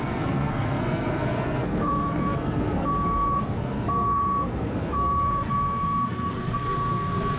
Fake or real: fake